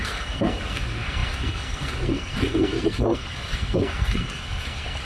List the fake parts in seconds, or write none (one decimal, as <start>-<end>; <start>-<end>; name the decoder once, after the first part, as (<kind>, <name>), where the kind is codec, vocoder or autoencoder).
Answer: 0.0-5.0 (codec, SNAC)